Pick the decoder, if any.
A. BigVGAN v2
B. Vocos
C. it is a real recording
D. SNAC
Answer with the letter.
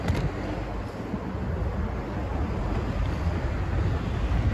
C